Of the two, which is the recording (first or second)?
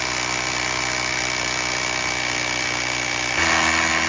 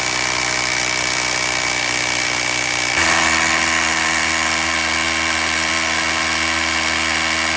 first